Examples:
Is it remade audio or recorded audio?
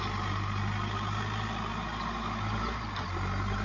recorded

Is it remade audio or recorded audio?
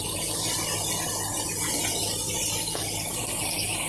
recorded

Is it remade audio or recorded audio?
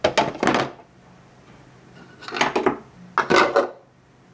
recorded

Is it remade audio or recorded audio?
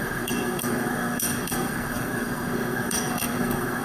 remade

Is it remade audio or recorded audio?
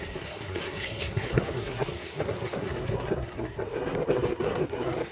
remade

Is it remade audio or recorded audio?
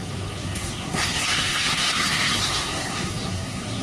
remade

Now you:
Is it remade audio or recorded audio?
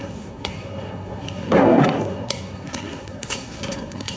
remade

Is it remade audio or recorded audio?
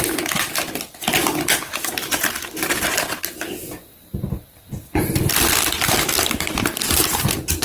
recorded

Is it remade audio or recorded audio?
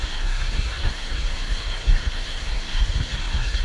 remade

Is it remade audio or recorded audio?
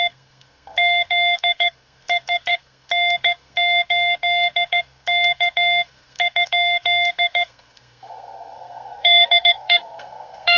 remade